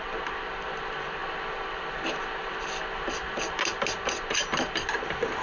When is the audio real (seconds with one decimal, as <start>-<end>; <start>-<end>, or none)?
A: 0.0-5.4